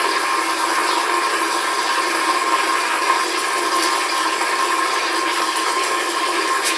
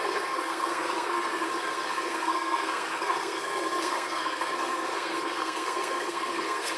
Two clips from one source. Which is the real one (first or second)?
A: first